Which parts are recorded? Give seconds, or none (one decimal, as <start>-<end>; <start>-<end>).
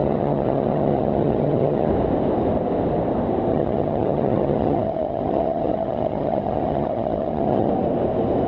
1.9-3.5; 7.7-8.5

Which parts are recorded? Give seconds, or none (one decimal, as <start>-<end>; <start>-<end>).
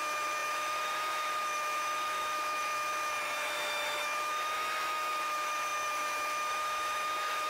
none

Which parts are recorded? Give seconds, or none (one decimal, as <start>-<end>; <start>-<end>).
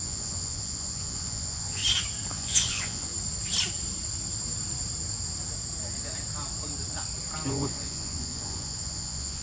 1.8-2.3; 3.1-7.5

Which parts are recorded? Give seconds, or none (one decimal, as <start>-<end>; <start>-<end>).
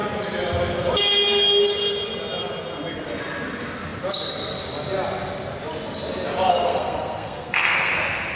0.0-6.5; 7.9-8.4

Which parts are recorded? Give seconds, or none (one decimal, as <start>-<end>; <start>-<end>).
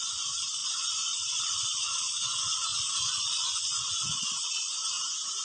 4.8-5.4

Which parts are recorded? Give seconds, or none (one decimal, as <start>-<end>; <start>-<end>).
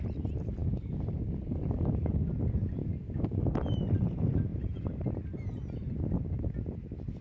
0.0-0.6; 2.3-2.8; 3.6-7.2